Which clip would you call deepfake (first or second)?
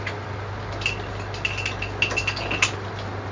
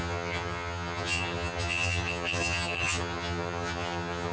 second